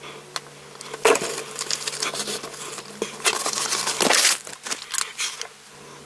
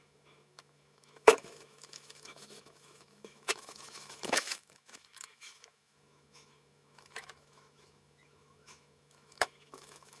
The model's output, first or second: second